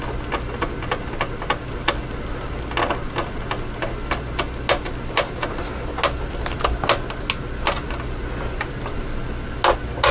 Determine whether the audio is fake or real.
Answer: real